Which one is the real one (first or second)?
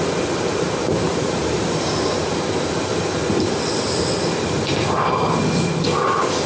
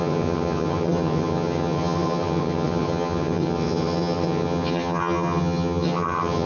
first